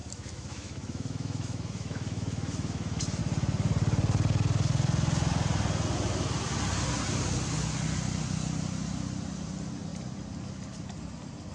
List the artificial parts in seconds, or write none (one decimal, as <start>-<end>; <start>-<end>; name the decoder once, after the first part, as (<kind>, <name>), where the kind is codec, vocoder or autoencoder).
0.0-3.2 (autoencoder, DAC-VAE)

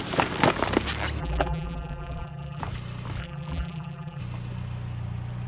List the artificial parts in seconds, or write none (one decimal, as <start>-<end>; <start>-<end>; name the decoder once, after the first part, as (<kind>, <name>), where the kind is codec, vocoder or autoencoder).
1.2-2.6 (vocoder, BigVGAN v2); 3.2-4.2

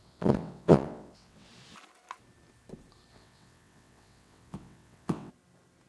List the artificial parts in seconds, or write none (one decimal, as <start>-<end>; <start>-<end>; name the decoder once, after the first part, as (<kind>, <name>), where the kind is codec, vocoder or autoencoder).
0.0-1.5 (vocoder, WaveNeXt); 3.1-5.3

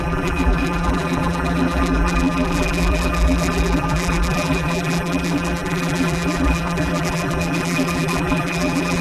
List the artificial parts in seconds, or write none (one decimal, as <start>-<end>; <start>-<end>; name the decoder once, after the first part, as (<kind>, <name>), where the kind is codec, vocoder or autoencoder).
0.0-9.0 (vocoder, BigVGAN v2)

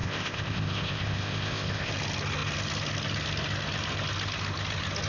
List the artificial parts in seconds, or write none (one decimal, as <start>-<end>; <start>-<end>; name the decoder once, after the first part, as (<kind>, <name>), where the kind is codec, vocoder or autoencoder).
0.0-1.9 (codec, ZipCodec)